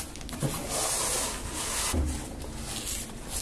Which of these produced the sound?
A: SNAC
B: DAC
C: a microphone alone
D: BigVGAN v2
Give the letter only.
C